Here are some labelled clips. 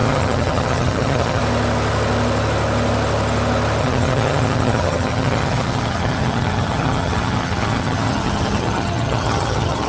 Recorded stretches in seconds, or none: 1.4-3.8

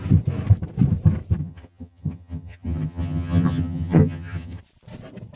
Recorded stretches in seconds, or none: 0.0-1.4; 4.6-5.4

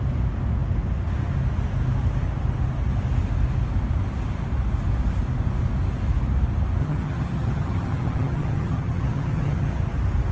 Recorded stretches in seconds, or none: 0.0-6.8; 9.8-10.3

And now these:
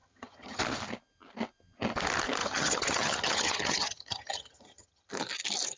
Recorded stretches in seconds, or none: 0.6-2.4; 5.1-5.8